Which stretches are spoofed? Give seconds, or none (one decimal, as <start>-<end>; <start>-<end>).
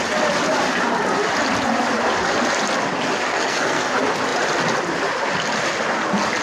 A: 3.3-3.9